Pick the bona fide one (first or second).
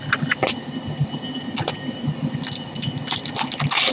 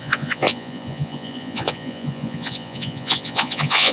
first